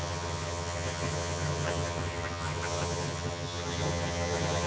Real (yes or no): no